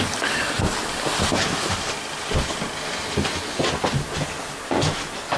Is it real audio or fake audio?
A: real